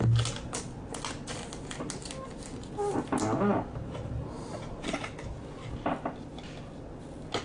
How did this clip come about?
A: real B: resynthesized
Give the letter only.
A